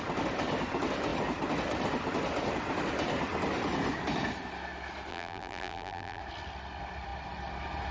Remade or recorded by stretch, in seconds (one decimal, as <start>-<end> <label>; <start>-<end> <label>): 0.0-5.1 recorded; 5.1-6.2 remade; 6.2-7.9 recorded